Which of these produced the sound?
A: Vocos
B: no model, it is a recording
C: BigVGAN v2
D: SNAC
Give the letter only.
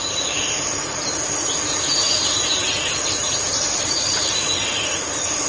C